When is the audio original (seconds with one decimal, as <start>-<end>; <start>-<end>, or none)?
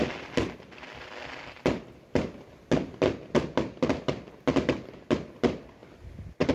0.0-6.5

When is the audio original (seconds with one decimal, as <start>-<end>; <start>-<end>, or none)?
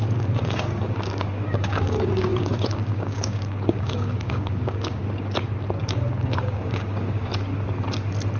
5.0-5.8; 7.3-8.4